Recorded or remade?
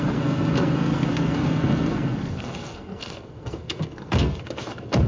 remade